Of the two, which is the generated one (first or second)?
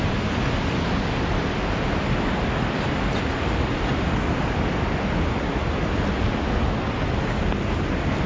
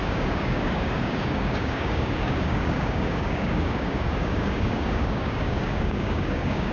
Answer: second